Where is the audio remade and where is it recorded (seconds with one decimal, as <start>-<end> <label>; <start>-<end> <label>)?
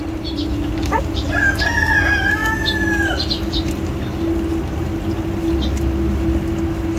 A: 0.0-7.0 recorded